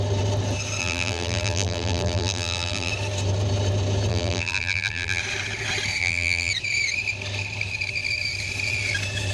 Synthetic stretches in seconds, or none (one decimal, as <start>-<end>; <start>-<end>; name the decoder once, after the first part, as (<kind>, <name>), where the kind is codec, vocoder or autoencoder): 0.8-2.9 (vocoder, BigVGAN v2); 4.1-5.2; 6.0-6.5